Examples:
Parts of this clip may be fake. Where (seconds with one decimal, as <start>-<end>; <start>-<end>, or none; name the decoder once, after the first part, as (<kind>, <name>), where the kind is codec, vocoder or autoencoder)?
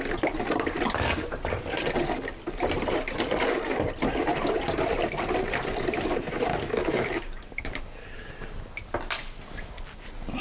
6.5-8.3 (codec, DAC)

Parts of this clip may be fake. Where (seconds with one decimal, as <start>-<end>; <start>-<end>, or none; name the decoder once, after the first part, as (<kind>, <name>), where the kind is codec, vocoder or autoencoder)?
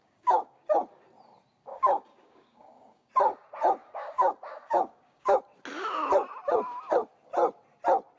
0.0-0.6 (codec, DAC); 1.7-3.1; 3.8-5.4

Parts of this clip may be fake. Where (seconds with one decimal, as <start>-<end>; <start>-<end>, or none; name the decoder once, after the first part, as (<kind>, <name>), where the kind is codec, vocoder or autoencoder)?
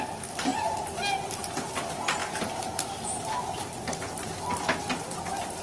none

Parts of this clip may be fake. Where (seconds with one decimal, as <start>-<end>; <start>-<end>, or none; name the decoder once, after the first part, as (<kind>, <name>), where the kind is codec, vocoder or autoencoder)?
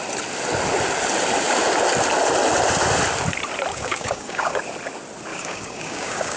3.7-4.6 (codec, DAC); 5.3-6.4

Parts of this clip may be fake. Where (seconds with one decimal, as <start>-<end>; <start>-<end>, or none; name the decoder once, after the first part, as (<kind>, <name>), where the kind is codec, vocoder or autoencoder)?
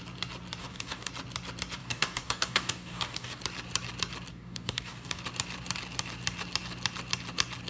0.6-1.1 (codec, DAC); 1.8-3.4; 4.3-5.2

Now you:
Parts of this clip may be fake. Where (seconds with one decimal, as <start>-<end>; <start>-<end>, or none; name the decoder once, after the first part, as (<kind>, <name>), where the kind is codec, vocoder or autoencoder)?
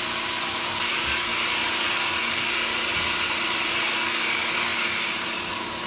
0.0-1.3 (codec, DAC); 1.9-2.7; 3.7-5.9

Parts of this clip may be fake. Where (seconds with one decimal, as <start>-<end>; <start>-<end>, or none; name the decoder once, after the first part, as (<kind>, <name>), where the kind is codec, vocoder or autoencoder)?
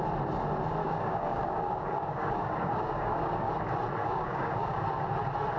0.8-3.5 (codec, DAC); 4.0-4.9